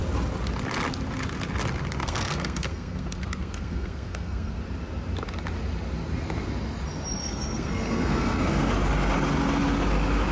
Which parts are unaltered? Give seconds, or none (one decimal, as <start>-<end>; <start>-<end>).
0.0-2.0; 4.6-7.2; 8.7-10.3